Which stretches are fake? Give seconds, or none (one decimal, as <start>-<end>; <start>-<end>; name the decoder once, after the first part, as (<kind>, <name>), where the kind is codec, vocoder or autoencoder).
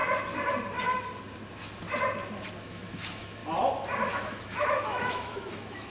2.6-3.4 (autoencoder, DAC-VAE); 4.1-5.9